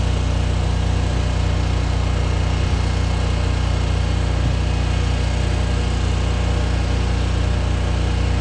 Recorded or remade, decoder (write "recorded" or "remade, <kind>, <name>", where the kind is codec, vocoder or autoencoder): recorded